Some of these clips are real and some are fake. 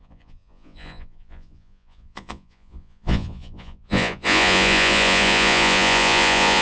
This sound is fake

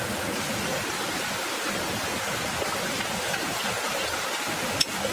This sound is real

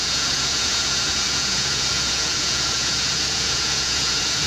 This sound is fake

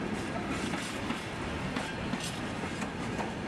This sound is real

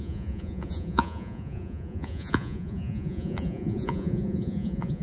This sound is fake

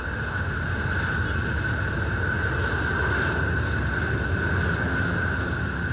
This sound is real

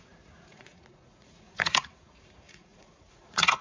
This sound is fake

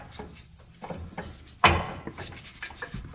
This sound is real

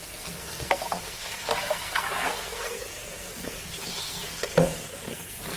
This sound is fake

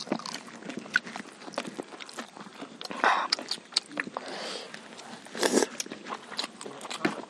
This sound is real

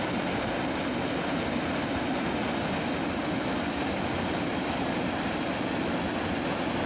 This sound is real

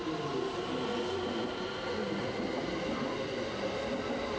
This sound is real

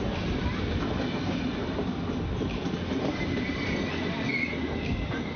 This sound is real